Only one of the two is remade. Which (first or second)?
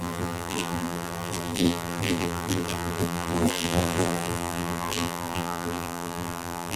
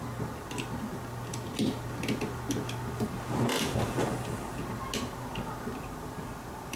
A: first